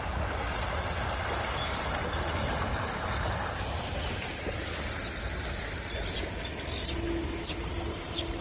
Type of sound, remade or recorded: recorded